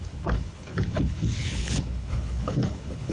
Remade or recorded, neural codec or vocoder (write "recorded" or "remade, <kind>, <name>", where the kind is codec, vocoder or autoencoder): remade, codec, HILCodec